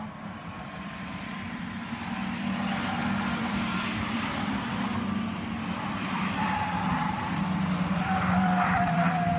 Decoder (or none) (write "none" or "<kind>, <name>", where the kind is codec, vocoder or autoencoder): vocoder, BigVGAN v2